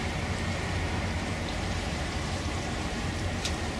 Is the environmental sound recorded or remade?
remade